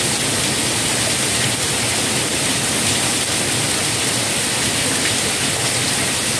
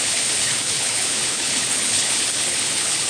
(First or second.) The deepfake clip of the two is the second